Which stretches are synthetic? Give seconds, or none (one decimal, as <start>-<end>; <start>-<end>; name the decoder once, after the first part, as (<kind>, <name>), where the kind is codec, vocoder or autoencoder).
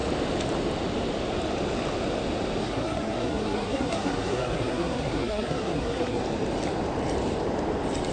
2.6-6.2 (codec, SNAC)